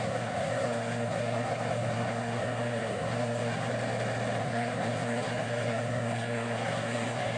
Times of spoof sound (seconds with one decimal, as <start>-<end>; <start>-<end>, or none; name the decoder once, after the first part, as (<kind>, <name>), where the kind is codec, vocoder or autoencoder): 0.0-3.7 (codec, SNAC); 4.4-7.4